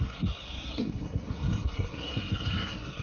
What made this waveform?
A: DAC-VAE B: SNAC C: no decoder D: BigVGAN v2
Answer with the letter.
B